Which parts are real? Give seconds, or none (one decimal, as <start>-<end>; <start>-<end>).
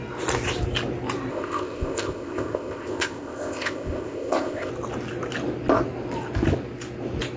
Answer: 0.0-1.3; 4.7-7.4